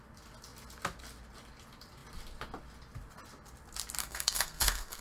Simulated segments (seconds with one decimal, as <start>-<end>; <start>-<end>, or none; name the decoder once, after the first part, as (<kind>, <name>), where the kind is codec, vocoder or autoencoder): 4.0-5.0 (codec, SNAC)